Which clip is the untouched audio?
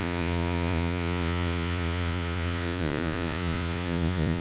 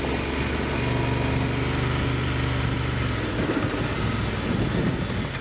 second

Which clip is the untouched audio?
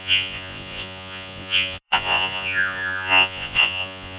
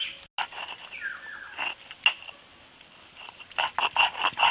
second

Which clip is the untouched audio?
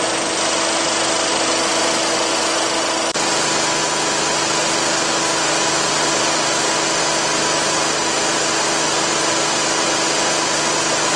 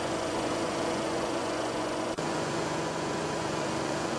first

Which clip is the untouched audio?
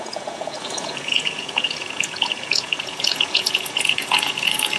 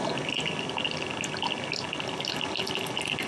second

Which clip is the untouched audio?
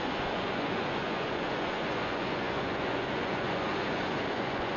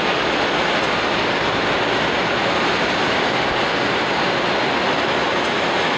second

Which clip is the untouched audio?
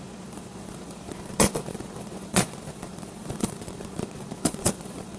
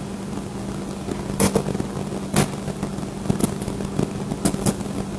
second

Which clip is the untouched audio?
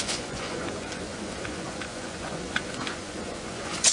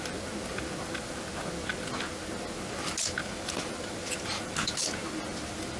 second